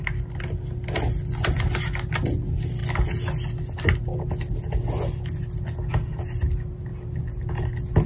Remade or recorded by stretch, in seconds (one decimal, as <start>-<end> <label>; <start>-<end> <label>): 0.0-8.1 recorded